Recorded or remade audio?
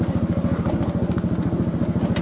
recorded